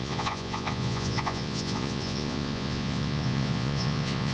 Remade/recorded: remade